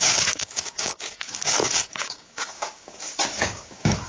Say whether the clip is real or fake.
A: fake